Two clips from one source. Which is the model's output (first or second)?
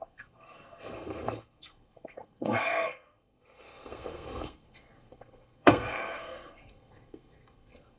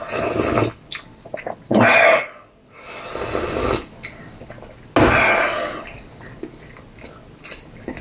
first